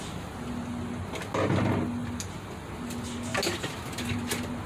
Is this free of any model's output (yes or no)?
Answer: yes